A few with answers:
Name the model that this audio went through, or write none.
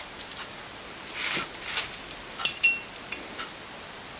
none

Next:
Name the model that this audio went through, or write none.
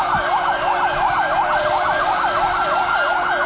none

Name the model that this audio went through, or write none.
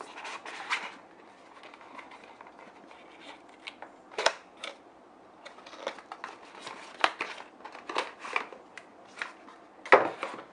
none